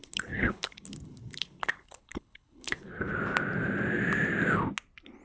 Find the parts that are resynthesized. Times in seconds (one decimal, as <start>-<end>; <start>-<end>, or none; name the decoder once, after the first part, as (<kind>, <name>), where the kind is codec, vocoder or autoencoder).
0.0-3.1 (codec, HILCodec)